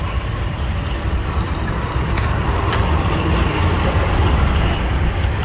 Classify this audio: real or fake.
real